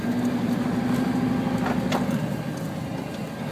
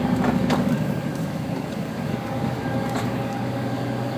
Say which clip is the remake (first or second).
second